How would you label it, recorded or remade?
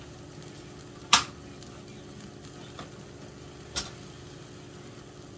recorded